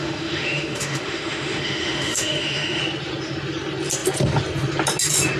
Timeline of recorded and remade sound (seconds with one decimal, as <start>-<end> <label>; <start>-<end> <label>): 0.0-2.8 remade; 2.8-5.4 recorded